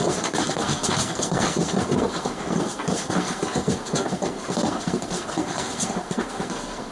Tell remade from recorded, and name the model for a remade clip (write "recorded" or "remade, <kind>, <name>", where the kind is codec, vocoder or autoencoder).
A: remade, codec, SNAC